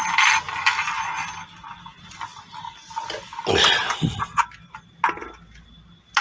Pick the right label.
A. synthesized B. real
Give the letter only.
B